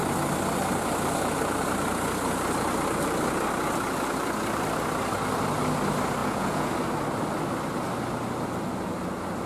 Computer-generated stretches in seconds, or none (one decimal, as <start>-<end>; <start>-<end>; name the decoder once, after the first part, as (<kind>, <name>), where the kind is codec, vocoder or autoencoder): 6.2-6.7 (vocoder, Vocos)